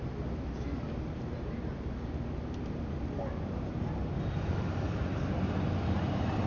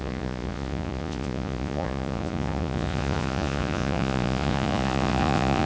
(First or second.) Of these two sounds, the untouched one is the first